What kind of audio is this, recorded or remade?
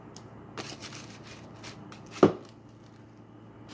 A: recorded